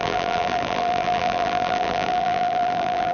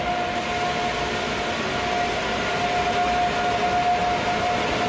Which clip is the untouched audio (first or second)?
second